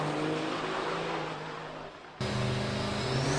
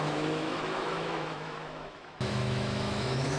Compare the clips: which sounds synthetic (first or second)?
second